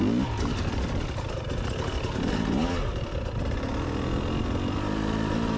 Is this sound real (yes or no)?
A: yes